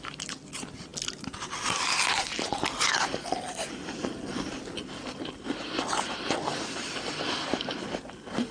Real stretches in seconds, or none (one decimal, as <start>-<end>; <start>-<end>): 0.0-8.5